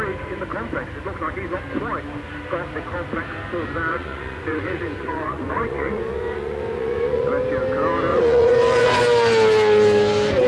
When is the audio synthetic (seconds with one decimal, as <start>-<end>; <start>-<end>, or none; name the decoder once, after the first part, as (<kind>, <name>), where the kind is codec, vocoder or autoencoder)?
3.9-7.3 (vocoder, Vocos); 8.1-9.0